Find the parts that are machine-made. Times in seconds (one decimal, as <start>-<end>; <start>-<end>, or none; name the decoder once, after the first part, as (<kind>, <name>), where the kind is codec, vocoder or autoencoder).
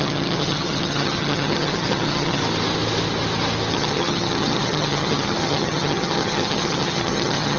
0.0-2.4 (vocoder, HiFi-GAN); 3.7-7.6